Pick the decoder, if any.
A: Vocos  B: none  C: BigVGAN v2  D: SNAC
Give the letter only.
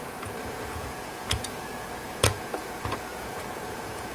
A